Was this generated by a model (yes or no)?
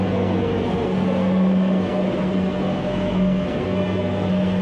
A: yes